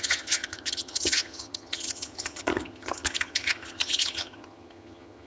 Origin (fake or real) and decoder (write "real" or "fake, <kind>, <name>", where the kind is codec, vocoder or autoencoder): fake, vocoder, HiFi-GAN